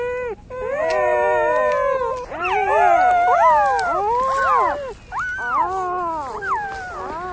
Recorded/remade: recorded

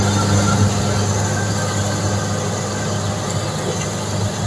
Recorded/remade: recorded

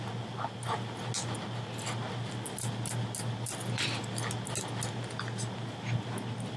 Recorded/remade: recorded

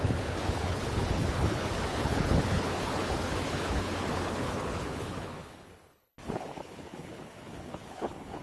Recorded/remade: remade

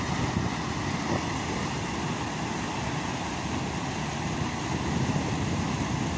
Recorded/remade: recorded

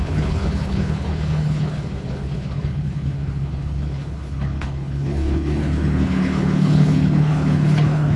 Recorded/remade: remade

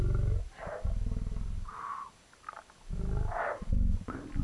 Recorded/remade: recorded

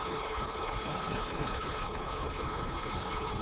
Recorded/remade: remade